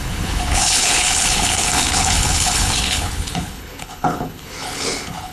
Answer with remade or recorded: remade